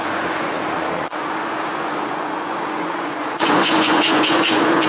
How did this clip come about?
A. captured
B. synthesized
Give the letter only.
B